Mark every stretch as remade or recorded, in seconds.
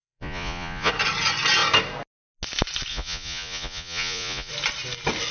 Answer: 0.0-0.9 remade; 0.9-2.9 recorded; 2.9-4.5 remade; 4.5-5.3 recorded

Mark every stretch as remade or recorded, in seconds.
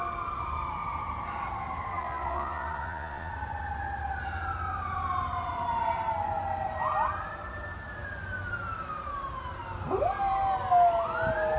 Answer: 0.0-1.9 recorded; 1.9-3.3 remade; 3.3-11.6 recorded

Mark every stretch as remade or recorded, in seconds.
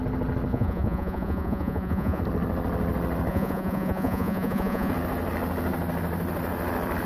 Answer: 0.0-0.5 recorded; 0.5-2.2 remade; 2.2-3.3 recorded; 3.3-4.9 remade; 4.9-7.1 recorded